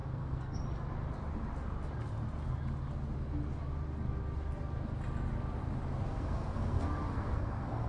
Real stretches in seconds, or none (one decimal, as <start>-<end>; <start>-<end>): 0.6-6.1